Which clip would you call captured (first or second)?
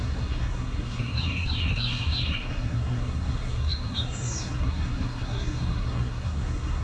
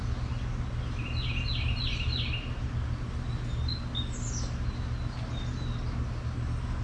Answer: second